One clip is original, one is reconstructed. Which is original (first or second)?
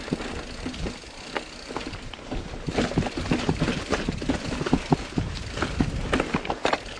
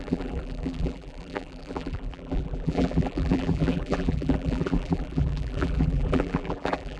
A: first